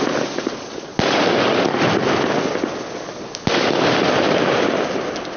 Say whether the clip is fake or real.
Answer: real